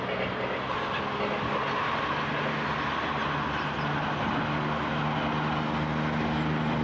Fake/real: real